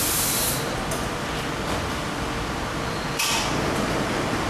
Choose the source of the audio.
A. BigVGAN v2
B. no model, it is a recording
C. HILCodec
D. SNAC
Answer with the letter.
B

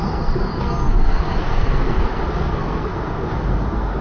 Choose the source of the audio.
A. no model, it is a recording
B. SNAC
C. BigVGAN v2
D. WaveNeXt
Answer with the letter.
B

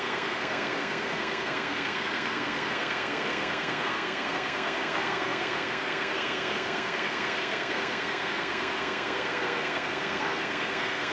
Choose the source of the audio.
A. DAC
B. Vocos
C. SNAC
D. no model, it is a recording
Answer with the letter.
C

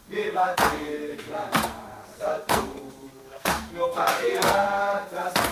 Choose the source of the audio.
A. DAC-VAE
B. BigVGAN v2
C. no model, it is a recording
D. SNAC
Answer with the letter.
D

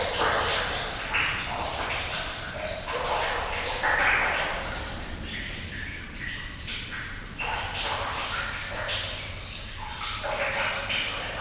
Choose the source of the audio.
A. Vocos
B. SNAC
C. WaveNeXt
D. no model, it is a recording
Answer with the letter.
D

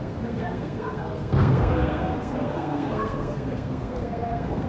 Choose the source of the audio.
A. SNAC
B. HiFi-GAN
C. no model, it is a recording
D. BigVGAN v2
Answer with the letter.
A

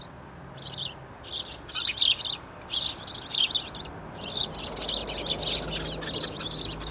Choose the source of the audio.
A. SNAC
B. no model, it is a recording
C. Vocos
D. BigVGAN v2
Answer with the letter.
B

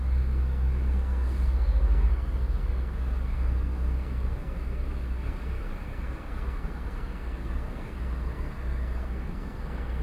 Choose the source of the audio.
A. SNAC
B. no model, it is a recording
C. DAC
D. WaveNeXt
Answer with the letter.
A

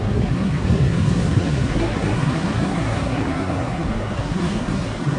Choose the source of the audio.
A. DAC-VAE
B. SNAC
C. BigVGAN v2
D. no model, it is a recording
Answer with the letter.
B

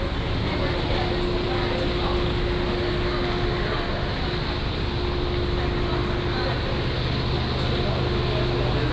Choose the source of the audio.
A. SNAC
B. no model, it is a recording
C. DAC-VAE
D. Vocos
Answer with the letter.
B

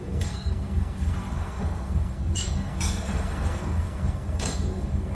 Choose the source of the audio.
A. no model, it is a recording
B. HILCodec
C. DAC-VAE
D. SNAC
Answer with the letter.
D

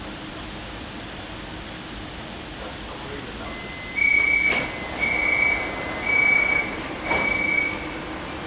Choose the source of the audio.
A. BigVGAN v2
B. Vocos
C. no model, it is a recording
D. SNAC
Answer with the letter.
C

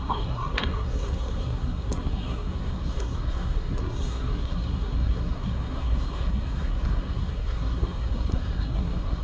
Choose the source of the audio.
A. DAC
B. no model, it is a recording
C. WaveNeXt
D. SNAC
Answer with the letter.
D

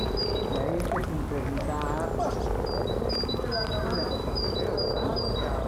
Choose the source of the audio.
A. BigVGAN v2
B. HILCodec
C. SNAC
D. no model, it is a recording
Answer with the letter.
D